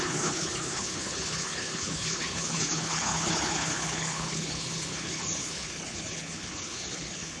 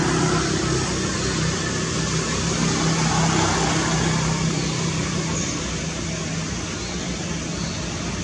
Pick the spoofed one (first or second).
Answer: first